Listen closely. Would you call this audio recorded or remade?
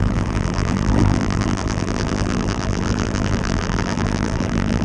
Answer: remade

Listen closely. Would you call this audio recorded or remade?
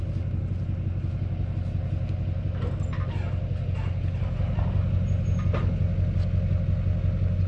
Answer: recorded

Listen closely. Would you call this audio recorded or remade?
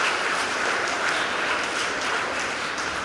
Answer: remade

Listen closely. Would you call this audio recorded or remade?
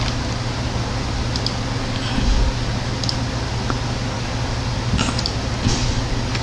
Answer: recorded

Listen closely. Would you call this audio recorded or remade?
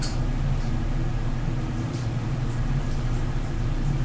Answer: remade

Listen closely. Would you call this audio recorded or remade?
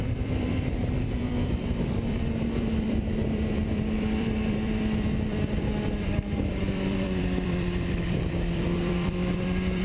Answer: remade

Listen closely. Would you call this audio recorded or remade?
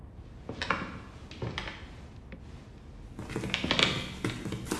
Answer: recorded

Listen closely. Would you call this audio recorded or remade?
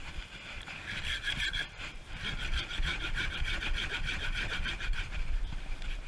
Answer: remade